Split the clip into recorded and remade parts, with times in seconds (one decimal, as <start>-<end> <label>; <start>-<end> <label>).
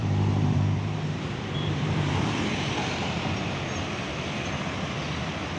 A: 0.0-3.4 remade; 3.4-5.6 recorded